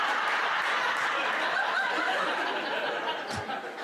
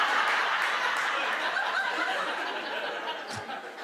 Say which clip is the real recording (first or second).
second